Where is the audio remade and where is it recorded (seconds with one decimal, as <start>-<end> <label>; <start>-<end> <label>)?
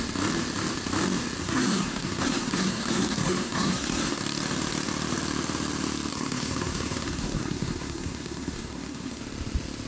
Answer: 0.0-1.4 recorded; 1.4-4.2 remade; 4.2-6.1 recorded; 6.1-9.2 remade; 9.2-9.9 recorded